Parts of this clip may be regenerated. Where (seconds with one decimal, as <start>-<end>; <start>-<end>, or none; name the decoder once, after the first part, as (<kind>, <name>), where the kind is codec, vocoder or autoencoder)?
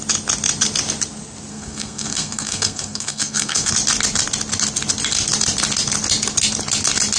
1.5-3.7 (codec, SNAC)